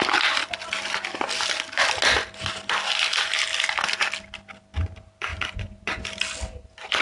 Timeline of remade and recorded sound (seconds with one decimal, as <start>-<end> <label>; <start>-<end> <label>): 0.0-5.3 recorded; 5.3-6.0 remade; 6.0-7.0 recorded